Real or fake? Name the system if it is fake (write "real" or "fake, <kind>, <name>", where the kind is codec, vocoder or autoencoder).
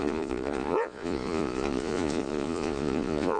fake, vocoder, Vocos